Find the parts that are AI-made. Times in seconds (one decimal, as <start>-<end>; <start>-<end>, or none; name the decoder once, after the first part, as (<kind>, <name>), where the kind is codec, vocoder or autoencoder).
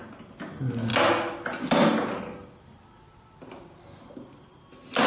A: none